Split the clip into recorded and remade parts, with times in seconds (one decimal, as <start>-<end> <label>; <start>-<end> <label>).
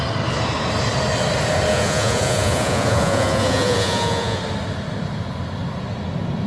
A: 0.0-1.7 recorded; 1.7-4.4 remade; 4.4-6.5 recorded